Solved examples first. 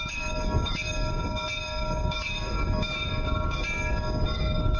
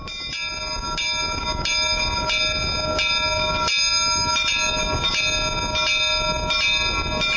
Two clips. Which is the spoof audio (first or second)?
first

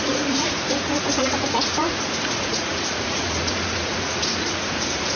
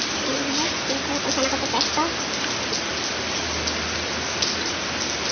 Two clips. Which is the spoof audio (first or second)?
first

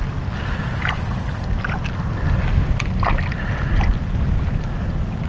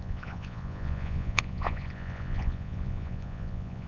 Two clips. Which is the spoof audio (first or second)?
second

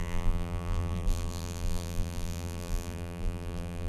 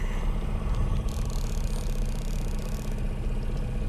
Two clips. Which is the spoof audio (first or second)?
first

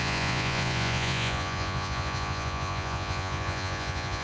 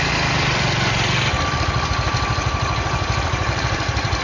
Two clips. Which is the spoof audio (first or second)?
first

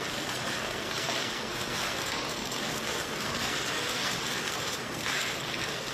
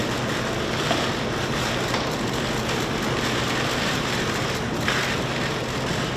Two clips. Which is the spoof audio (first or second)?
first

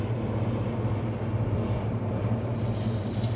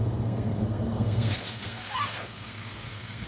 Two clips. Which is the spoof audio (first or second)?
second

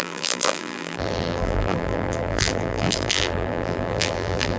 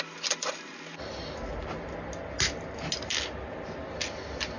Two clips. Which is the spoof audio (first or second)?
first